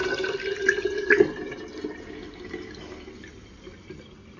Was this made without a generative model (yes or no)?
yes